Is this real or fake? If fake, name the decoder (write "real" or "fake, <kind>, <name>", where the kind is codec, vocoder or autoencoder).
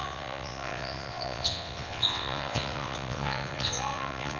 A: fake, vocoder, WaveNeXt